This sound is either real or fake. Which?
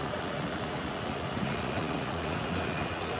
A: fake